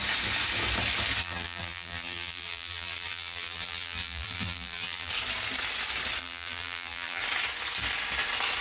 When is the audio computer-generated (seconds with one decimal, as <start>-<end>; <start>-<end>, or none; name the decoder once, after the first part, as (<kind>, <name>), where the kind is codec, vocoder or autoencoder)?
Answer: 1.2-5.1 (vocoder, BigVGAN v2); 6.2-7.2